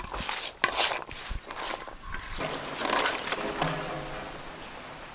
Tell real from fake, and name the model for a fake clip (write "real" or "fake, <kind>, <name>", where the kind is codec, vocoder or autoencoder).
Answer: real